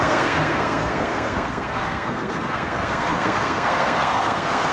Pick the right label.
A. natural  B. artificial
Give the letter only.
B